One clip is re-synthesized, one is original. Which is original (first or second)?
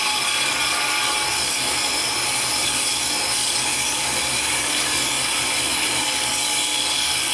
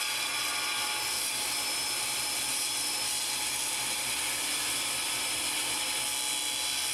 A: second